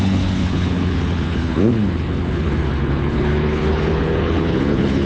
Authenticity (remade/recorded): remade